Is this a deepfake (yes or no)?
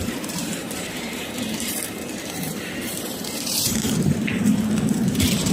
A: yes